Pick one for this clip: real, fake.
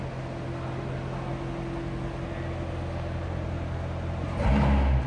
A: real